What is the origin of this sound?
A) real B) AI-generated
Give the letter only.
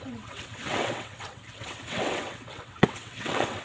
B